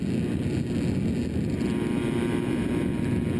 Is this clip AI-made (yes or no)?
no